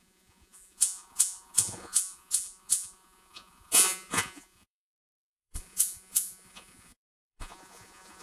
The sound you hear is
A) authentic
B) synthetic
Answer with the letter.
B